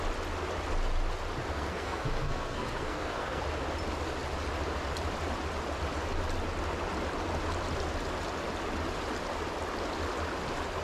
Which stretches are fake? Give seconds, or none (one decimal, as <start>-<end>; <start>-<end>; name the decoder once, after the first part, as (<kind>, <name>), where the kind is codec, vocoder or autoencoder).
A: 1.5-3.4 (codec, SNAC)